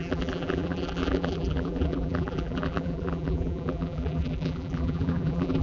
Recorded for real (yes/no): no